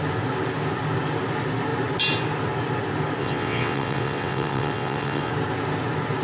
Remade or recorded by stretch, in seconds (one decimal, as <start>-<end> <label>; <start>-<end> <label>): 0.0-3.2 recorded; 3.2-5.3 remade; 5.3-6.2 recorded